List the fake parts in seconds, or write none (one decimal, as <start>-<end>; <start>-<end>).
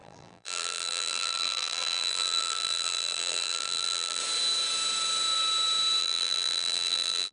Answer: 0.0-4.2; 6.0-7.3